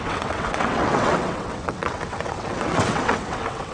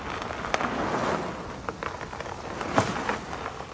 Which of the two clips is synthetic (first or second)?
first